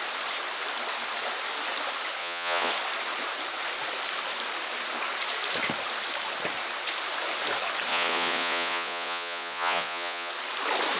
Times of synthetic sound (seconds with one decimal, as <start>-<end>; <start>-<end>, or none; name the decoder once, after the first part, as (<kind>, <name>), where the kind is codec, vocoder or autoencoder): 2.2-2.7 (vocoder, Vocos); 7.9-10.3